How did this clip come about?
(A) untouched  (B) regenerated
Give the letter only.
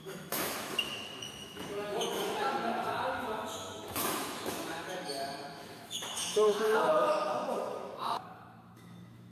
B